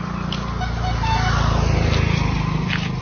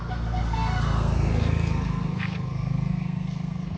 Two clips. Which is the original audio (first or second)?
first